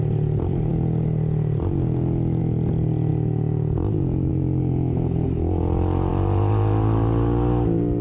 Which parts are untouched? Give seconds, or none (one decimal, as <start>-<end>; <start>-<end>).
0.0-8.0

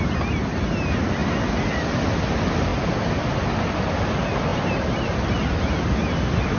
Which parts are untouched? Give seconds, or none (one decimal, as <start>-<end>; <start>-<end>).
0.0-6.6

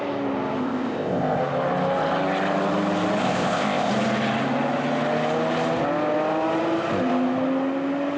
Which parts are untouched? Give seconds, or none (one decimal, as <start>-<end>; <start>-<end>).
0.0-0.6; 1.4-3.2; 3.9-8.2

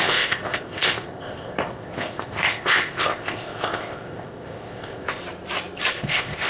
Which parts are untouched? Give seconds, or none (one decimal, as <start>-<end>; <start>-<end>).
5.2-5.9

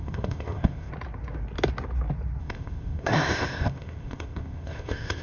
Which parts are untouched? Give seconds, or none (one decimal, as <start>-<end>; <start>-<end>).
0.9-2.4

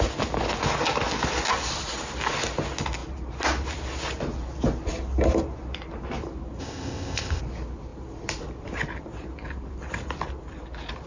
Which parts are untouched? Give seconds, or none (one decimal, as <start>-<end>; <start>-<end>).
0.0-6.6; 7.4-11.1

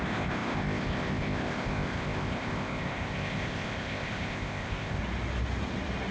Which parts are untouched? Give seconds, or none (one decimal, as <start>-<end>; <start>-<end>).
5.0-6.1